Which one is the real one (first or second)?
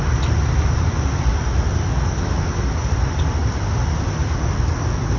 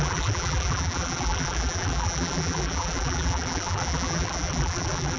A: first